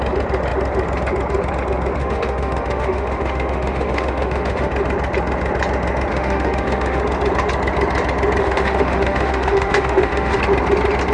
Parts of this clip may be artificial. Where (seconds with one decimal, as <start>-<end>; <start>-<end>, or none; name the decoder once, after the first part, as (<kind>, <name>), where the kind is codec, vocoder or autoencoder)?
2.0-4.7 (autoencoder, DAC-VAE); 6.1-7.0; 8.4-10.4